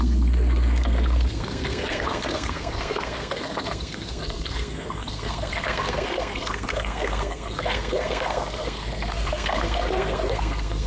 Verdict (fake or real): fake